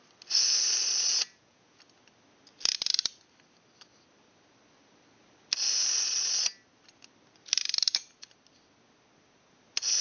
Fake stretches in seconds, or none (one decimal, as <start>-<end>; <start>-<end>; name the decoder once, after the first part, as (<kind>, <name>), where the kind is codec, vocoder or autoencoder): 1.1-1.8 (vocoder, Vocos)